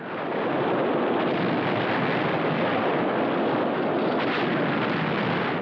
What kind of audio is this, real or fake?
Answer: real